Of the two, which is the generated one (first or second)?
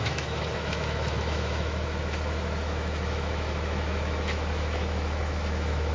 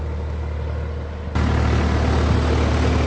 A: first